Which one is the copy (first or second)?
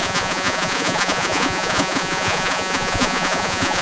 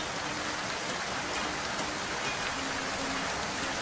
first